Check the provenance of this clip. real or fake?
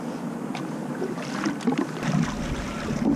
real